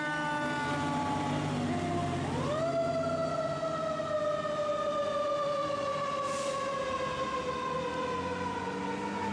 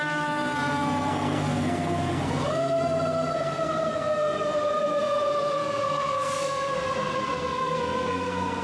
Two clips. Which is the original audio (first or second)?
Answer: first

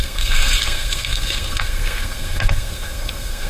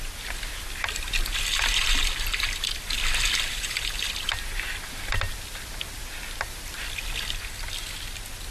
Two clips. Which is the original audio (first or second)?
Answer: second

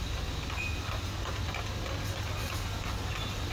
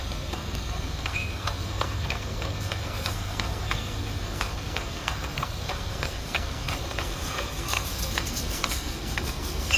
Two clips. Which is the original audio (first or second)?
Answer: first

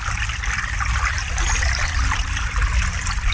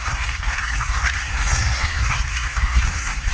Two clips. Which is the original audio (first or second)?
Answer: first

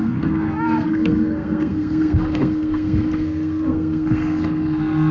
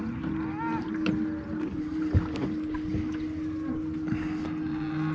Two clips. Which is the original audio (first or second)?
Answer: second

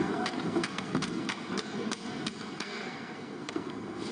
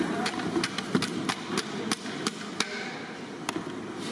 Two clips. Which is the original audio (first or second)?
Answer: second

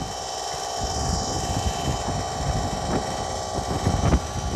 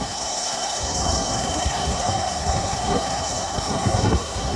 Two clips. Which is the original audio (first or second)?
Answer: first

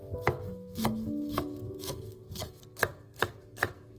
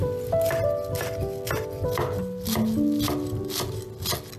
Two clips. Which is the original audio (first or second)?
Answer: second